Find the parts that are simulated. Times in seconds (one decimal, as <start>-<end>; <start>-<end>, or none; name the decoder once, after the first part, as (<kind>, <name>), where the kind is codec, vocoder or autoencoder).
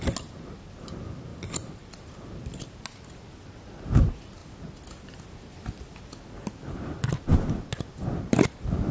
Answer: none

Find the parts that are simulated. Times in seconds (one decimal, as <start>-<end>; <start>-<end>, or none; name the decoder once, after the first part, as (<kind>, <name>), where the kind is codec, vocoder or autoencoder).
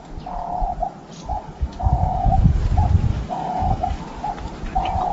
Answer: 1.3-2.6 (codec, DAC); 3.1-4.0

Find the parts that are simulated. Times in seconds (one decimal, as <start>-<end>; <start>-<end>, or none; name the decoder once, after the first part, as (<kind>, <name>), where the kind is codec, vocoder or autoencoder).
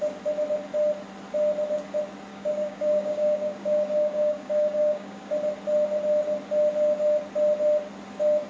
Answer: 2.3-5.3 (codec, DAC)